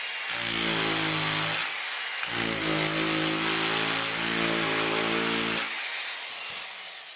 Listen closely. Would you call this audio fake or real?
real